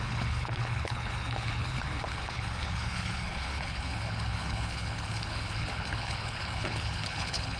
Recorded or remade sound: remade